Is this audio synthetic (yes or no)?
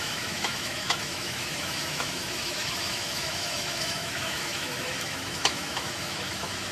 yes